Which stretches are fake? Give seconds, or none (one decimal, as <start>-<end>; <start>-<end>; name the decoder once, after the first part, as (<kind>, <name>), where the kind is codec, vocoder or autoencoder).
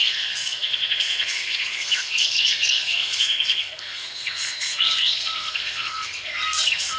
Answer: 0.0-7.0 (codec, SNAC)